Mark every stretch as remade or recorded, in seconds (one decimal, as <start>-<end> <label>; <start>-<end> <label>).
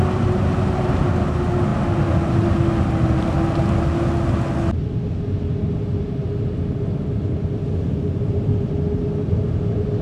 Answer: 0.0-1.7 recorded; 1.7-2.7 remade; 2.7-10.0 recorded